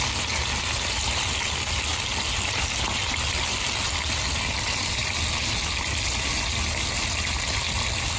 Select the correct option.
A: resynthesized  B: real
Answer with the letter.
B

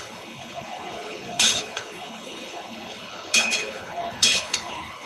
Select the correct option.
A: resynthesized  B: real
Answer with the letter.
A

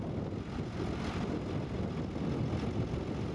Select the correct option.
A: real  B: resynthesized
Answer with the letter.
A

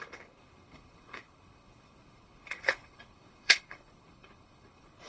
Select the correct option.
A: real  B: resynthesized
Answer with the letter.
B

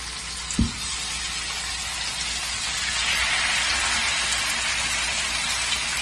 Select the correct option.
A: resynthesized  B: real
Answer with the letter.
B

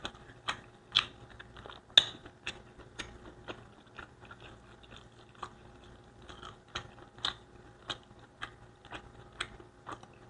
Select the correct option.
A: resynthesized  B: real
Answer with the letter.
B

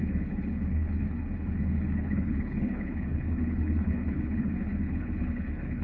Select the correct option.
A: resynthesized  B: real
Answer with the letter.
A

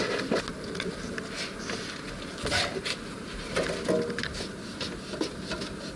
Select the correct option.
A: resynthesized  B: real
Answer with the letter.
B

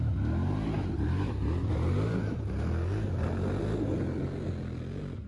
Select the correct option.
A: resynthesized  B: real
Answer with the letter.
B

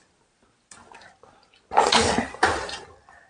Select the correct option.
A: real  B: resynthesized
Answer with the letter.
A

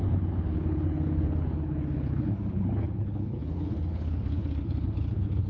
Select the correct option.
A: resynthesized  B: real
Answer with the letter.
A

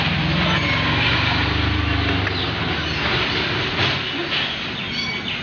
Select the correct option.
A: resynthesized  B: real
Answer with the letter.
B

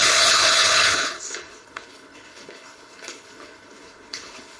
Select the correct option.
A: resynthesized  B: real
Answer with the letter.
A